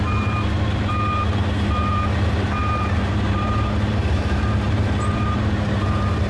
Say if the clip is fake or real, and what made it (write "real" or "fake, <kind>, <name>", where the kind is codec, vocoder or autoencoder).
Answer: fake, vocoder, BigVGAN v2